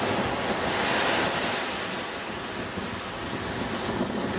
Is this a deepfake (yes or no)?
no